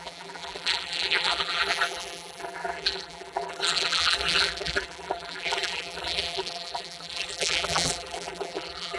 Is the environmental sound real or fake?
fake